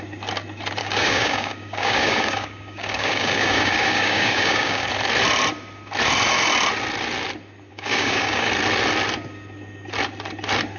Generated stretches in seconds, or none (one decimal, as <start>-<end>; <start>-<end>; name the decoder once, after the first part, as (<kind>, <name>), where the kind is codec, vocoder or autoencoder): 0.8-4.9 (codec, DAC); 7.7-8.5